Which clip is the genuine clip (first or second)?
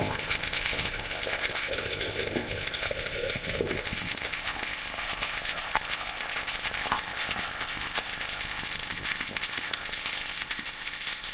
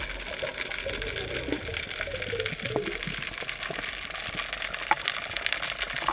second